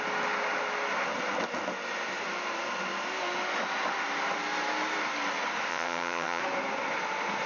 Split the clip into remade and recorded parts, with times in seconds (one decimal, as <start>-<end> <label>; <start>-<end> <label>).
0.0-5.7 recorded; 5.7-6.4 remade; 6.4-7.5 recorded